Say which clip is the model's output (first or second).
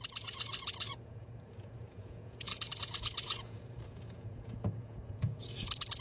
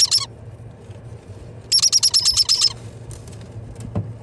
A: first